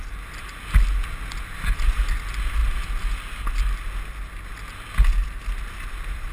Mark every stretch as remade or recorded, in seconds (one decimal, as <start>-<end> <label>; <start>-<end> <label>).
0.0-6.3 recorded